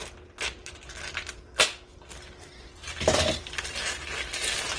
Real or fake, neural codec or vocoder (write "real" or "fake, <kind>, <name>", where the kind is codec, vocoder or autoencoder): real